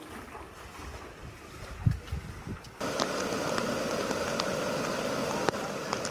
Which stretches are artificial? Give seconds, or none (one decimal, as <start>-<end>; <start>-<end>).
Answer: none